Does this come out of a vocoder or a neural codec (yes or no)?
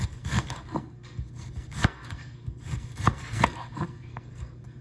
yes